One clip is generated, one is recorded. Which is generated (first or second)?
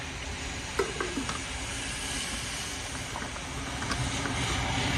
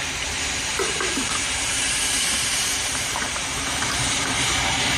second